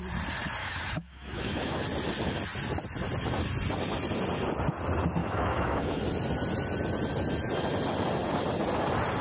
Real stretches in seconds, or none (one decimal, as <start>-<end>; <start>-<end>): 0.0-0.6; 1.8-5.2; 6.0-9.2